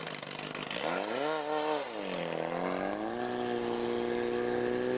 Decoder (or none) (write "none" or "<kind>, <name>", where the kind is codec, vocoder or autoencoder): none